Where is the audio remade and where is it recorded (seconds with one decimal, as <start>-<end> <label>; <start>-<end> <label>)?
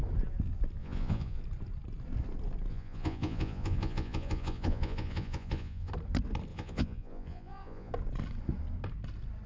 0.0-0.8 recorded; 0.8-1.4 remade; 1.4-2.7 recorded; 2.7-5.9 remade; 5.9-6.5 recorded; 6.5-7.9 remade; 7.9-9.5 recorded